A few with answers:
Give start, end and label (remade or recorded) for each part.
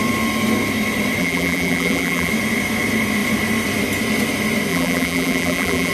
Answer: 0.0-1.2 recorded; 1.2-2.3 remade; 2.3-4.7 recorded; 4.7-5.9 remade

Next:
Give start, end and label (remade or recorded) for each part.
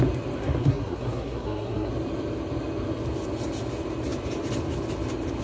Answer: 0.0-0.4 recorded; 0.4-1.9 remade; 1.9-5.4 recorded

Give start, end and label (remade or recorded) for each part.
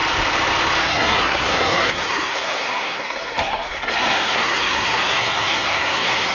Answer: 0.0-0.8 recorded; 0.8-6.3 remade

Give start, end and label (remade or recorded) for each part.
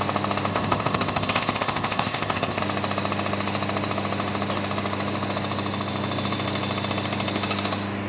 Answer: 0.0-0.5 recorded; 0.5-2.6 remade; 2.6-8.1 recorded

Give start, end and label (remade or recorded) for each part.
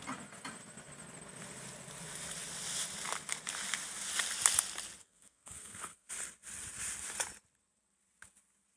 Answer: 0.0-5.0 recorded; 5.0-6.1 remade; 6.1-8.8 recorded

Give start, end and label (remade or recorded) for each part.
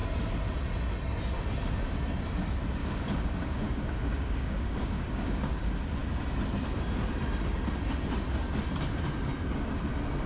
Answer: 0.0-2.8 recorded; 2.8-5.6 remade; 5.6-10.3 recorded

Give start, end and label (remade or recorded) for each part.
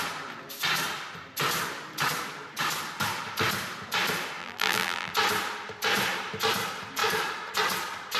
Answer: 0.0-4.4 recorded; 4.4-5.1 remade; 5.1-8.2 recorded